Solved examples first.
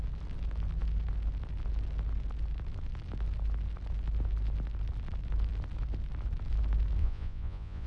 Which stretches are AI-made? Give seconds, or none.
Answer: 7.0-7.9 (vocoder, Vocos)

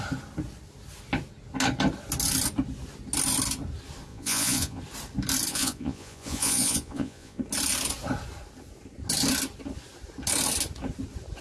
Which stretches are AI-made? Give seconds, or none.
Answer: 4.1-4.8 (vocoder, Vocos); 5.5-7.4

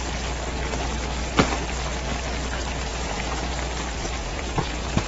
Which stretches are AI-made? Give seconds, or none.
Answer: 2.9-3.5 (vocoder, Vocos); 4.2-5.1

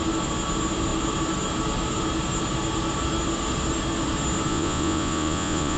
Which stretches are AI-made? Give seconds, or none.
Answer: 4.5-5.8 (vocoder, Vocos)